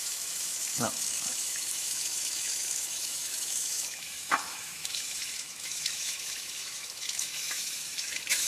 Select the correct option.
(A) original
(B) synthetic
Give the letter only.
B